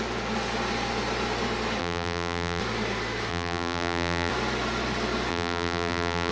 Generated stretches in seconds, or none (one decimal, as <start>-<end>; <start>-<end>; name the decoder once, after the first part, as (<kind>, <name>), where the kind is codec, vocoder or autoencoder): 1.8-2.6 (vocoder, BigVGAN v2); 3.3-4.3; 5.3-6.3